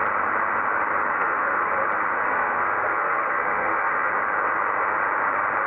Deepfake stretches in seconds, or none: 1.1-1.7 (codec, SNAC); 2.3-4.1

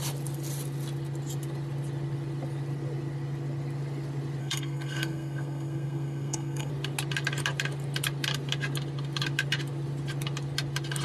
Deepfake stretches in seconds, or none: 4.4-6.7 (codec, SNAC)

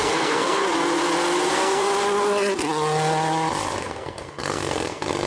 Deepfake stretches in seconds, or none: 0.0-0.6 (codec, SNAC); 1.5-1.9; 3.8-5.3

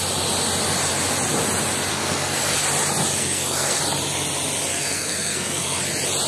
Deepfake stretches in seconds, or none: 1.9-2.6 (codec, SNAC); 3.2-3.8; 4.7-5.8

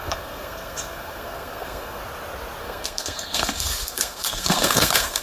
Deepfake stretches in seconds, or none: 0.0-2.0 (codec, SNAC); 2.6-5.2

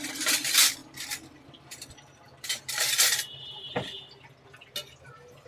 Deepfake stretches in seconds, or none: none

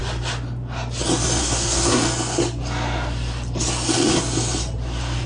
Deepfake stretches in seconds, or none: 1.4-2.0 (codec, SNAC)